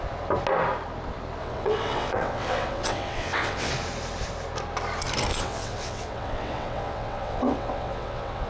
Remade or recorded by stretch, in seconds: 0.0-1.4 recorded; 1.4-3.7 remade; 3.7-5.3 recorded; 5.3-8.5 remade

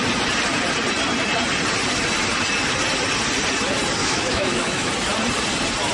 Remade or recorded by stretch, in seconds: 0.0-4.0 recorded; 4.0-4.9 remade; 4.9-5.9 recorded

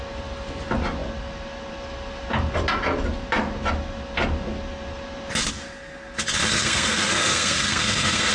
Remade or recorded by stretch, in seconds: 0.0-6.5 recorded; 6.5-8.3 remade

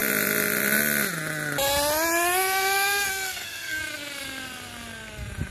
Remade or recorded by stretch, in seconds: 0.0-3.1 recorded; 3.1-3.8 remade; 3.8-5.5 recorded

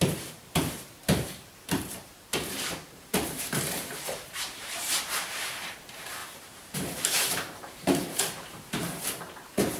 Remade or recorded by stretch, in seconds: 0.0-9.8 remade